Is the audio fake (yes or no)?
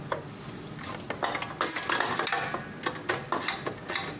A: no